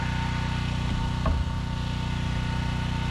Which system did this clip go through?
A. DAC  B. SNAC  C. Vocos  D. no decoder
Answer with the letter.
D